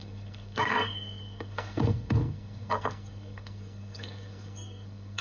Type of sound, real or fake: fake